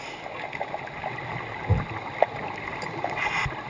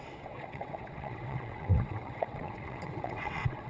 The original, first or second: first